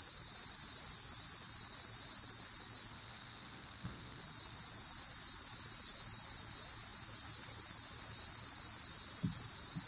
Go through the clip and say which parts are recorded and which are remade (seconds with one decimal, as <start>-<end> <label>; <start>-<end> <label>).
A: 0.0-2.9 recorded; 2.9-4.2 remade; 4.2-9.9 recorded